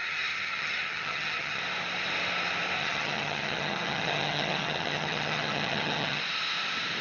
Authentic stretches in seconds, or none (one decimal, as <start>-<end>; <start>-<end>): 1.6-2.8; 6.2-7.0